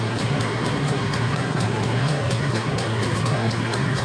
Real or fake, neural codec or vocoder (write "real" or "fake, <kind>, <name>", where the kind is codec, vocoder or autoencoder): fake, codec, SNAC